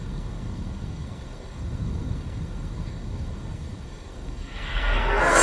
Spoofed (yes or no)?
yes